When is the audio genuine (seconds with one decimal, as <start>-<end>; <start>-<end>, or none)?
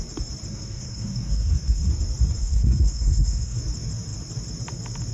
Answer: 0.0-0.5; 1.9-2.4; 3.6-5.1